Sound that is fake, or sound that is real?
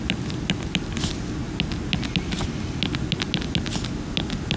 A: real